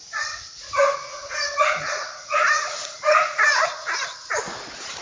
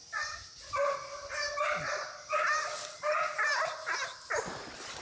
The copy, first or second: first